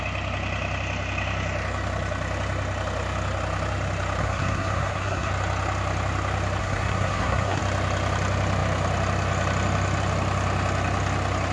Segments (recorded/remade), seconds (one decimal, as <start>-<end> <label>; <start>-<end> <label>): 0.0-4.2 recorded; 4.2-5.3 remade; 5.3-6.6 recorded; 6.6-7.6 remade; 7.6-11.5 recorded